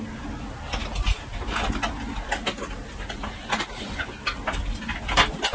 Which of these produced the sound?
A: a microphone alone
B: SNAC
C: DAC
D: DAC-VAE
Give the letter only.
A